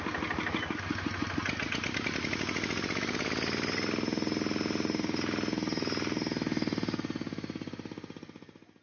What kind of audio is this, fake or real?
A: real